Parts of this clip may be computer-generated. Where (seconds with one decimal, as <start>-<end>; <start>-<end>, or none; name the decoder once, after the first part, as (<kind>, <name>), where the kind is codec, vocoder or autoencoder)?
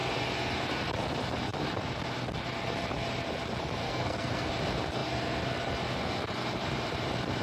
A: 3.8-4.5 (codec, SNAC)